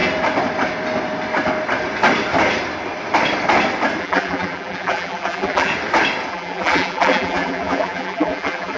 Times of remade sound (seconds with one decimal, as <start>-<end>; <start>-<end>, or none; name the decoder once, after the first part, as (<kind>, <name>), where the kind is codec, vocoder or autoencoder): 4.0-5.7 (vocoder, BigVGAN v2); 6.3-8.8